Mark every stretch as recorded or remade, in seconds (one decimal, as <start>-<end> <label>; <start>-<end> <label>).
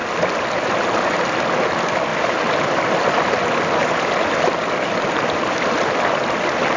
0.0-2.1 recorded; 2.1-3.4 remade; 3.4-3.8 recorded; 3.8-6.2 remade; 6.2-6.8 recorded